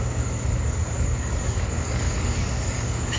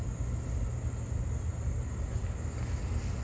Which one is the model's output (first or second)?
first